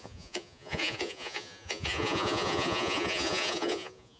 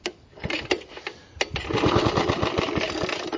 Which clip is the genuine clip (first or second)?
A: second